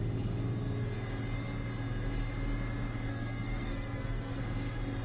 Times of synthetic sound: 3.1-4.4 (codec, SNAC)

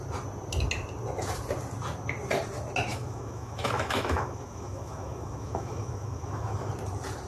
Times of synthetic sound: 2.9-6.7 (autoencoder, DAC-VAE)